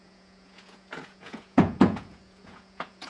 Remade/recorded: remade